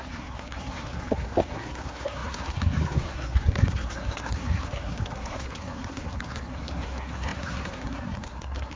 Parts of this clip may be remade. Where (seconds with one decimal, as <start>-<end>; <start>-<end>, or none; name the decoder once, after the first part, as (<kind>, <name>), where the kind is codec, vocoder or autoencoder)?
0.0-8.8 (codec, SNAC)